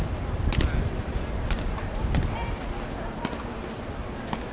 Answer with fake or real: real